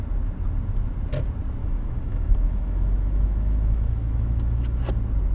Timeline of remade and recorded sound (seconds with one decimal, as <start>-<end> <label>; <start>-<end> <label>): 0.0-1.6 recorded; 1.6-4.8 remade; 4.8-5.3 recorded